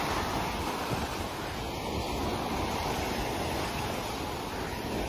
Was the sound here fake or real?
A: real